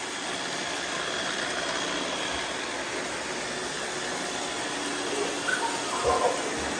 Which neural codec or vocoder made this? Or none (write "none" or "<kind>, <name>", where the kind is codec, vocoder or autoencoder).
none